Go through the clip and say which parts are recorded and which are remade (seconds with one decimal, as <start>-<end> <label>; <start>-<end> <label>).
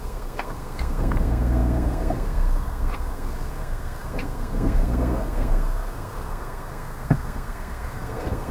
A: 0.0-8.5 remade